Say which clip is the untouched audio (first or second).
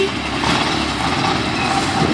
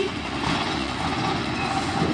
first